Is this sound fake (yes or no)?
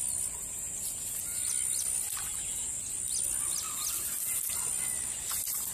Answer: no